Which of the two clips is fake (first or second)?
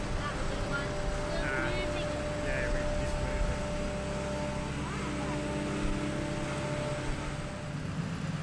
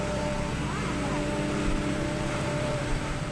second